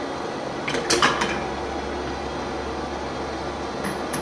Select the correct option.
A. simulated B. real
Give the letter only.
B